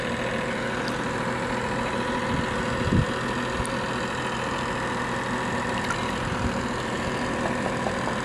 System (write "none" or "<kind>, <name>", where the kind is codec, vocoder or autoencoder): none